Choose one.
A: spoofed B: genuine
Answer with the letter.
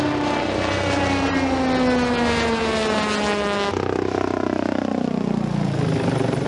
B